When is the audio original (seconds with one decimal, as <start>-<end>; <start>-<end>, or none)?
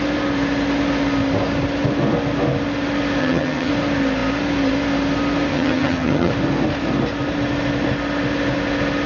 0.0-3.2; 3.7-5.5; 6.3-9.1